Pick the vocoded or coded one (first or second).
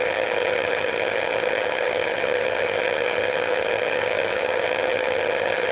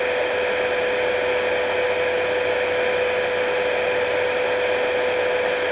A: first